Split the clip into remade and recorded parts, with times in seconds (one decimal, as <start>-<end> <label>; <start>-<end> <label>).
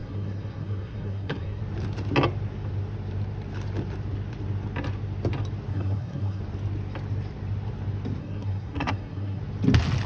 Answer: 0.0-1.6 remade; 1.6-5.7 recorded; 5.7-6.4 remade; 6.4-8.2 recorded; 8.2-9.4 remade; 9.4-10.1 recorded